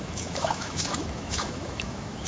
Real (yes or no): no